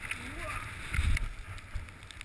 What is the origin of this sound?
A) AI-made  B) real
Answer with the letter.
B